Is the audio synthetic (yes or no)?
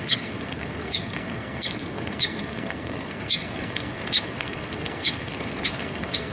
yes